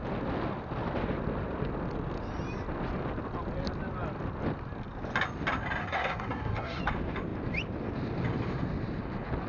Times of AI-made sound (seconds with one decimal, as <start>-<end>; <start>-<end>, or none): 5.8-6.8